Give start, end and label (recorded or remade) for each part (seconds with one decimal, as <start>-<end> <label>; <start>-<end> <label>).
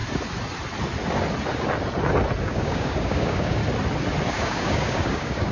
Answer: 0.0-2.4 recorded; 2.4-3.6 remade; 3.6-4.3 recorded; 4.3-5.5 remade